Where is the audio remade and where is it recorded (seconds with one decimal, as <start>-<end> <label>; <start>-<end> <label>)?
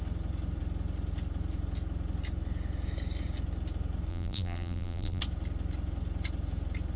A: 0.0-4.1 recorded; 4.1-5.2 remade; 5.2-7.0 recorded